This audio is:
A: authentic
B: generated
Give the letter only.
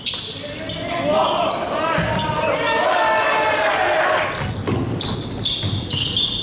A